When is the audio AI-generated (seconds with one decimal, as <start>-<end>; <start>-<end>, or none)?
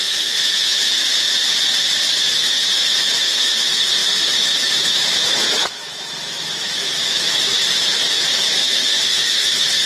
0.0-0.9; 2.2-9.9